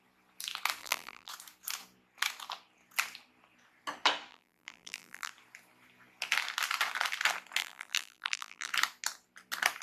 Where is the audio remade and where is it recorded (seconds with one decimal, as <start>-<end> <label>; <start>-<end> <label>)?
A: 0.0-0.8 recorded; 0.8-1.3 remade; 1.3-4.3 recorded; 4.3-5.3 remade; 5.3-7.6 recorded; 7.6-8.7 remade; 8.7-9.8 recorded